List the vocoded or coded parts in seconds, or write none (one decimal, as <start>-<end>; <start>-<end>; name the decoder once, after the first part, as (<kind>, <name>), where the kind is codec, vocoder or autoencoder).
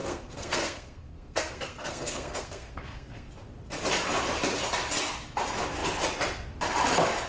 0.0-3.3 (codec, SNAC)